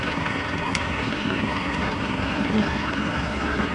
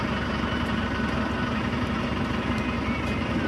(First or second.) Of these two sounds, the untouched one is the second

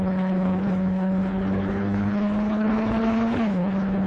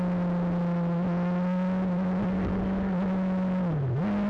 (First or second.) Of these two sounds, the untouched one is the second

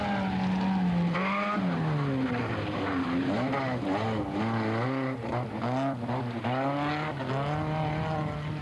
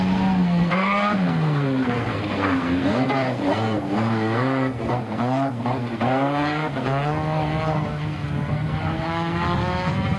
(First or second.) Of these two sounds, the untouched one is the first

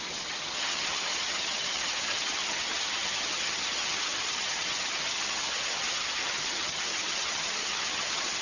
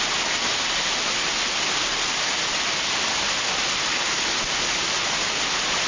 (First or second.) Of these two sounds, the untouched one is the second